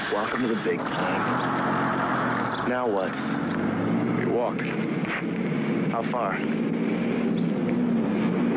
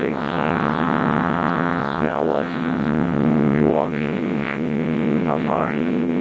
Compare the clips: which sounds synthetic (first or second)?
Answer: second